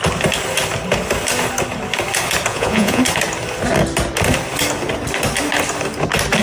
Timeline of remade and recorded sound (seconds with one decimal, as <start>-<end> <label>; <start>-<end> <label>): 0.0-2.5 recorded; 2.5-3.0 remade; 3.0-6.4 recorded